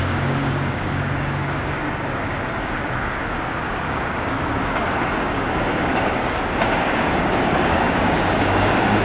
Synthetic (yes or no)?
yes